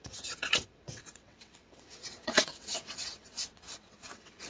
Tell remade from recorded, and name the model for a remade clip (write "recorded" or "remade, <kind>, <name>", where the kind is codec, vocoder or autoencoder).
remade, vocoder, WaveNeXt